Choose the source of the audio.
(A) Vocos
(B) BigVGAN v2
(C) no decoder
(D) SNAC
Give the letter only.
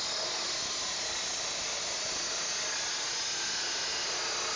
C